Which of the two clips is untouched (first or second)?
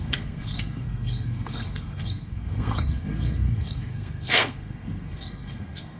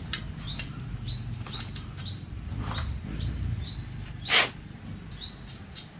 second